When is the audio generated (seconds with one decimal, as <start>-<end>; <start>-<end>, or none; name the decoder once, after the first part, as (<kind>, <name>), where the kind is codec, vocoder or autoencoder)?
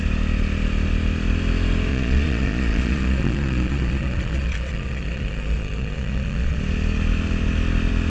1.9-6.6 (vocoder, Vocos)